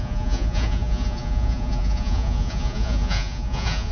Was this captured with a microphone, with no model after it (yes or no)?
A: no